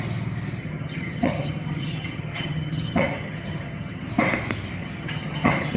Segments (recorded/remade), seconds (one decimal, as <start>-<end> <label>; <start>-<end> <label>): 0.0-0.6 recorded; 0.6-4.1 remade; 4.1-4.8 recorded; 4.8-5.8 remade

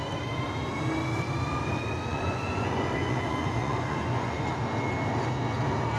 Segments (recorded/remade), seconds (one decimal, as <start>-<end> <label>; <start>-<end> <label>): 0.0-2.1 recorded; 2.1-4.5 remade; 4.5-6.0 recorded

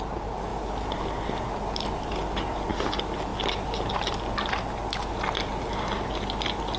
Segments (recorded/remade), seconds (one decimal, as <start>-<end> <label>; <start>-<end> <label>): 0.0-6.8 recorded

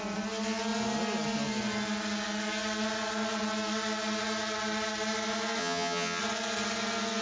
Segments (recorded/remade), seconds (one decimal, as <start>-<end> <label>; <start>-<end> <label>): 0.0-5.6 recorded; 5.6-6.2 remade; 6.2-7.2 recorded

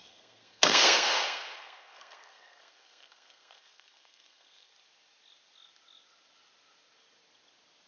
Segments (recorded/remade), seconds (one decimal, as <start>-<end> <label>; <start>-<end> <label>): 0.0-4.7 remade; 4.7-7.9 recorded

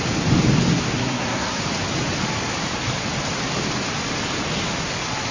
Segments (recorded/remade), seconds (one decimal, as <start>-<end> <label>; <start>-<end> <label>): 0.0-1.0 recorded; 1.0-1.6 remade; 1.6-5.3 recorded

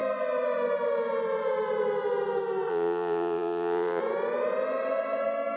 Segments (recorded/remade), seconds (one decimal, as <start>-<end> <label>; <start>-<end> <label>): 0.0-2.7 recorded; 2.7-4.0 remade; 4.0-5.6 recorded